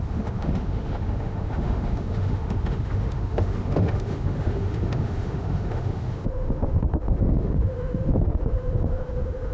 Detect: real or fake fake